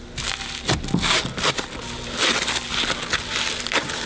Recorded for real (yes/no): yes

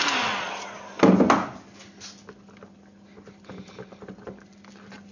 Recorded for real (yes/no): yes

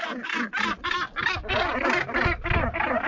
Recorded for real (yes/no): yes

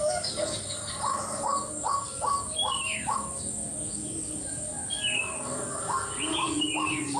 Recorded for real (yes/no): no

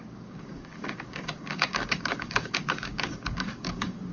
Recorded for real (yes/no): no